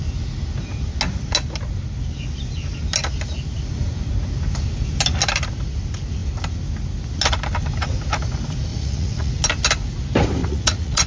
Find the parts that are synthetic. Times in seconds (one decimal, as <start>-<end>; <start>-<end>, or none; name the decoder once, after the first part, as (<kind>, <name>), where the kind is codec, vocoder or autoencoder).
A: 8.7-9.3 (vocoder, Vocos); 10.4-11.1